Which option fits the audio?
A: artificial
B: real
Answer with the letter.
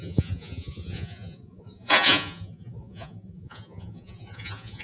A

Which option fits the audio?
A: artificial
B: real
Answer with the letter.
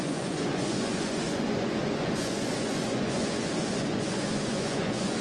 A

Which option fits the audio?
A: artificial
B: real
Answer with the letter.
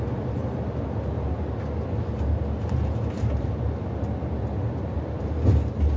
B